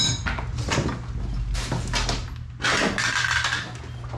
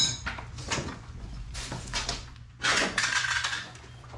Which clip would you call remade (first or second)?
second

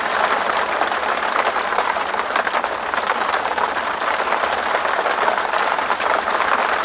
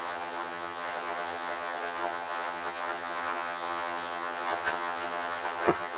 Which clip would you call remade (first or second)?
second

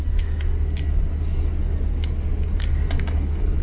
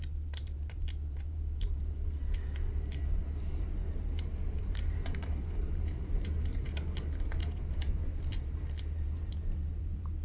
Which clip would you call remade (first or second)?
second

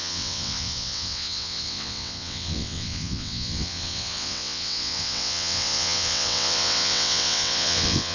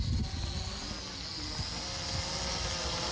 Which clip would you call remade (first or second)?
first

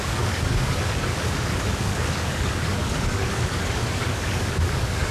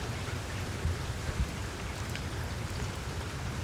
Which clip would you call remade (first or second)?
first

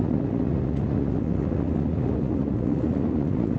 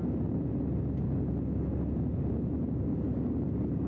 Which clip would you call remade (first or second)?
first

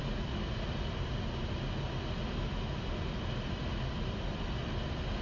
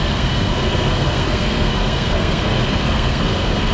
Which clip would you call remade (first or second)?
second